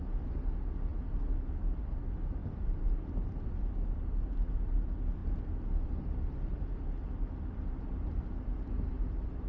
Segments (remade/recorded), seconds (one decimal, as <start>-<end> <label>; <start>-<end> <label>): 0.0-9.5 remade